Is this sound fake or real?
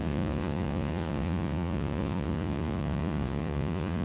fake